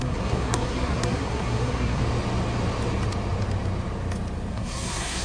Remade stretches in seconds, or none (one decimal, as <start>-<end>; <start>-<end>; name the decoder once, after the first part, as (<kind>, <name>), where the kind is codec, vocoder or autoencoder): 0.0-2.0 (codec, SNAC); 4.5-5.2